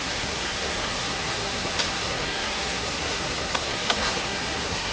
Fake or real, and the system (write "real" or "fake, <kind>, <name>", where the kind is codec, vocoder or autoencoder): fake, codec, SNAC